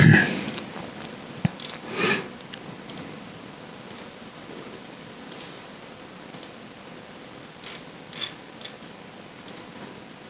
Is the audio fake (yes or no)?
no